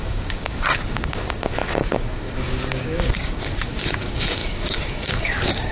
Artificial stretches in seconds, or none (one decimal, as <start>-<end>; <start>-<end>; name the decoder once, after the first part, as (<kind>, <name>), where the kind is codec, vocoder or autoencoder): 0.0-5.7 (codec, DAC)